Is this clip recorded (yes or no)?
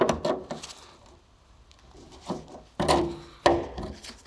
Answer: yes